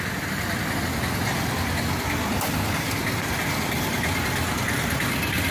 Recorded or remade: recorded